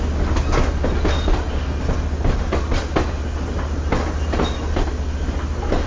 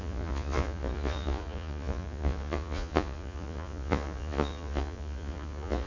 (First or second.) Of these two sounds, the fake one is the second